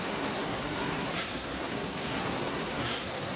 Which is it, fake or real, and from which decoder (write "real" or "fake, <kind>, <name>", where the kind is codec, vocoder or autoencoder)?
fake, codec, SNAC